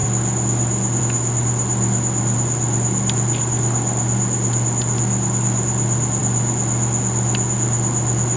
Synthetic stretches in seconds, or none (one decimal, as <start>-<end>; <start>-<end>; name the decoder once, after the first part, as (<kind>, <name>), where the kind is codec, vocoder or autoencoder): none